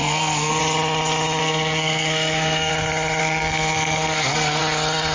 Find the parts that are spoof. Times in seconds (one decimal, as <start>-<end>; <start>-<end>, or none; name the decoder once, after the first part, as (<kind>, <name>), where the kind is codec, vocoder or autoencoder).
0.0-0.6 (codec, SNAC); 1.4-2.7; 3.2-4.6